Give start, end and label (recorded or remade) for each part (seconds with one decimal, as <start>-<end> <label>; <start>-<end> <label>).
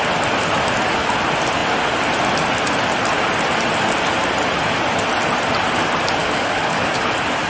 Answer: 0.0-6.2 recorded; 6.2-7.0 remade; 7.0-7.5 recorded